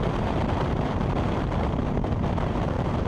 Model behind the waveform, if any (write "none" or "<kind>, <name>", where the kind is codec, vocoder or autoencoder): vocoder, BigVGAN v2